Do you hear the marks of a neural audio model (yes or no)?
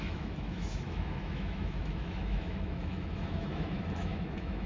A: yes